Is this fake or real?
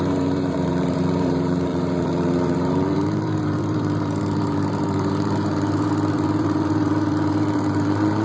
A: fake